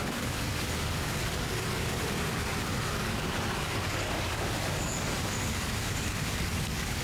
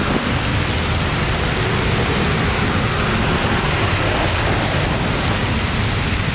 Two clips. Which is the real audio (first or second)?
second